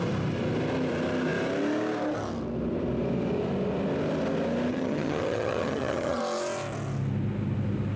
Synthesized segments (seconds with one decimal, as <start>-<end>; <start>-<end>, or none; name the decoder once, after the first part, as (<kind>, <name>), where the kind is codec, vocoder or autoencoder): 4.7-6.2 (vocoder, HiFi-GAN)